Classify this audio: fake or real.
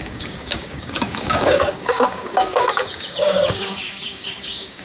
fake